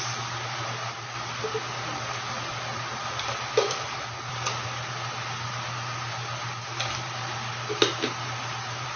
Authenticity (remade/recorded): recorded